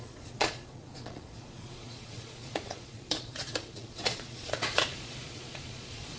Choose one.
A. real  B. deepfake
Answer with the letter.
B